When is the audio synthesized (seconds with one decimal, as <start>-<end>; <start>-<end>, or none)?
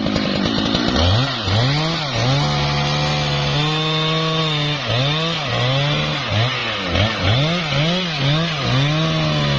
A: none